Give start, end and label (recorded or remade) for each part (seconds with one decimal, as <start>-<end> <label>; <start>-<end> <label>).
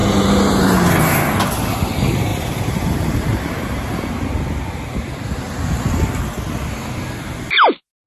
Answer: 0.0-0.9 remade; 0.9-2.3 recorded; 2.3-4.1 remade; 4.1-8.1 recorded